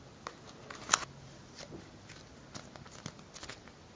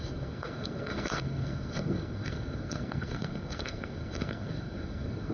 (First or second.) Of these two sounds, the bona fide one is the first